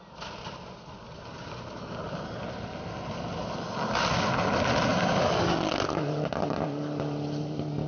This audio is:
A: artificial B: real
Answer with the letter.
B